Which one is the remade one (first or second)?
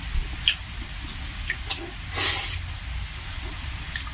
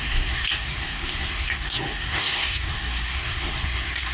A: second